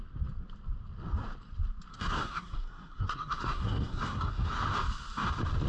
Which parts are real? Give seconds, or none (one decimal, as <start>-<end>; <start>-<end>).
0.0-1.9; 4.5-5.7